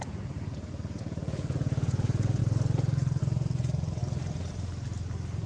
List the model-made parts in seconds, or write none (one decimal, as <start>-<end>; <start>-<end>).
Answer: 0.0-2.4; 3.2-4.0